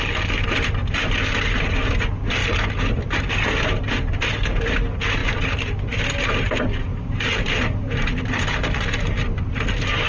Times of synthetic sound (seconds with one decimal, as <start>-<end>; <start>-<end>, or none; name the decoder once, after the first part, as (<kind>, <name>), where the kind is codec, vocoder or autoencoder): 6.9-7.8 (vocoder, BigVGAN v2)